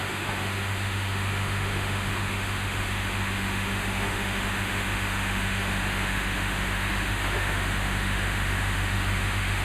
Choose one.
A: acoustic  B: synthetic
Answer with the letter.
B